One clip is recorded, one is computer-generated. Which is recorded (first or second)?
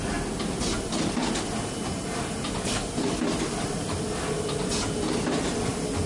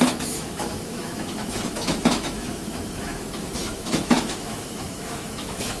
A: first